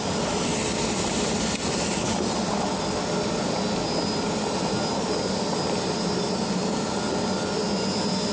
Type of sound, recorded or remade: recorded